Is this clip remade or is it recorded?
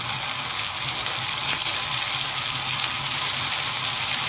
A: recorded